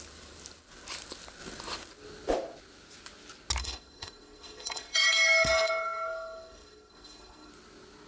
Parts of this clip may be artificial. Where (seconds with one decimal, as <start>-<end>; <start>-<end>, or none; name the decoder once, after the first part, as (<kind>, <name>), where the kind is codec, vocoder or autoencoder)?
3.6-7.5 (codec, SNAC)